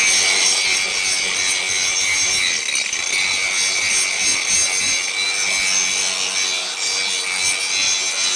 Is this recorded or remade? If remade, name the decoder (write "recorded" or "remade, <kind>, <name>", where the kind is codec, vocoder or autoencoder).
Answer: recorded